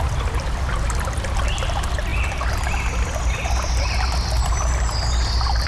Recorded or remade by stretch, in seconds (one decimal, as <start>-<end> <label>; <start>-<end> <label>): 0.0-5.7 recorded